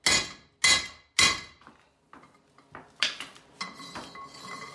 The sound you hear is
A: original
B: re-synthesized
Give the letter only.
A